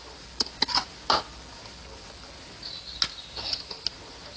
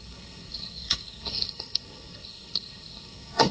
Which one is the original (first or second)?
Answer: first